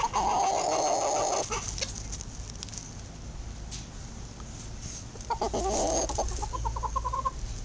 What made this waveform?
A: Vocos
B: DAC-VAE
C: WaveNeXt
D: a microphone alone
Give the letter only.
D